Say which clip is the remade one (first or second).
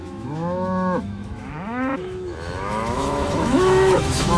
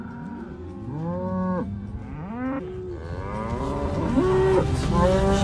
first